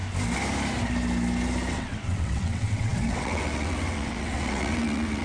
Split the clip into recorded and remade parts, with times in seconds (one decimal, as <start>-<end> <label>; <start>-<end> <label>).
0.0-1.7 recorded; 1.7-5.2 remade